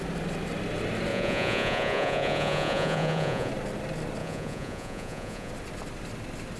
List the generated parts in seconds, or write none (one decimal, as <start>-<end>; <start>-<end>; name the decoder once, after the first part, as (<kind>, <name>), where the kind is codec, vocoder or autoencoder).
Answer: 1.1-3.5 (vocoder, Vocos); 4.2-5.5